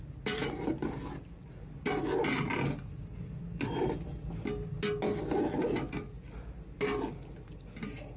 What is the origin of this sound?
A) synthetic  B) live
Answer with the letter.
B